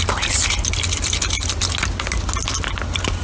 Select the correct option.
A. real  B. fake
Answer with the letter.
A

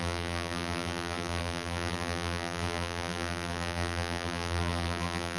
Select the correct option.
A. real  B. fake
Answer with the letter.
B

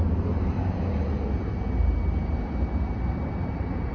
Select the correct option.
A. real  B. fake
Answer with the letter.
B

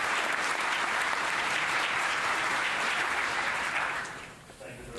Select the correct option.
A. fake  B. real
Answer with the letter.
A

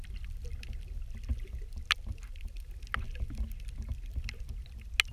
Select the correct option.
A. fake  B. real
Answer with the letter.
B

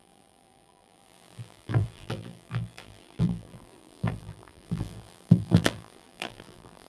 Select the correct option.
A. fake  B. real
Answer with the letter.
A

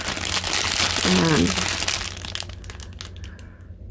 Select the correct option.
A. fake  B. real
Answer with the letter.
B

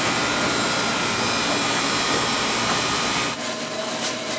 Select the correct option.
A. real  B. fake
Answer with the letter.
B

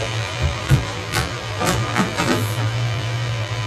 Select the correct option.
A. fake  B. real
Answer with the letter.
A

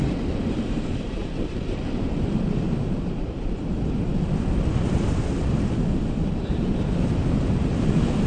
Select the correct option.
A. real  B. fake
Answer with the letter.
B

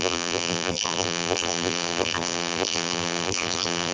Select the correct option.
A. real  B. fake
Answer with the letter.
B